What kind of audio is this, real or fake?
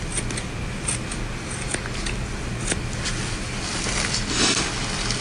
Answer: real